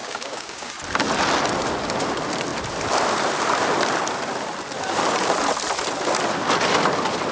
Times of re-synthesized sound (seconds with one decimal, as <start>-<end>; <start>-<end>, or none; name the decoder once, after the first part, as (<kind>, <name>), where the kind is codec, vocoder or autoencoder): 0.0-0.7 (codec, DAC)